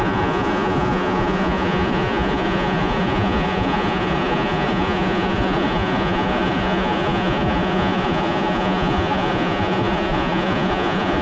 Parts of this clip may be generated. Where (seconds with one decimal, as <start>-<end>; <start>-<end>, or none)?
0.0-11.2